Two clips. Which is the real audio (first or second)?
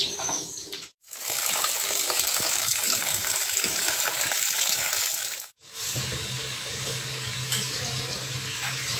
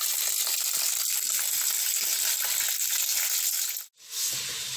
second